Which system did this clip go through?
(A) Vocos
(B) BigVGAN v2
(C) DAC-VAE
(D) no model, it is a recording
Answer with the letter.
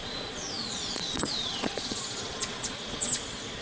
A